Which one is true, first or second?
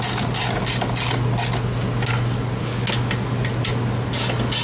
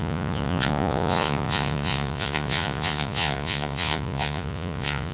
first